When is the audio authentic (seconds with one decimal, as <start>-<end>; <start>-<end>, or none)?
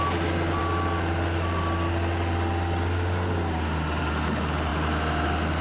0.0-5.6